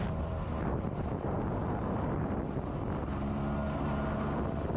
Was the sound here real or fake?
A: real